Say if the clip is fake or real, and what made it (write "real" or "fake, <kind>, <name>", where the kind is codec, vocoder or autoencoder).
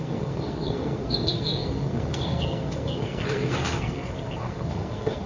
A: fake, codec, SNAC